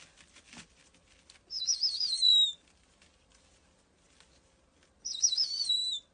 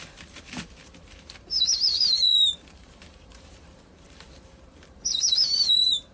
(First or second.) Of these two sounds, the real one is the first